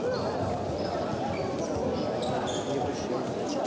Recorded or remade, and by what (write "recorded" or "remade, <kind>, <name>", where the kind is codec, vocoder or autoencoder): recorded